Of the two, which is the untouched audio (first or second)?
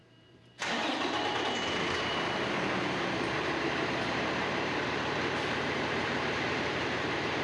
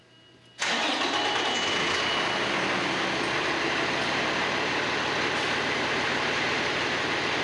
second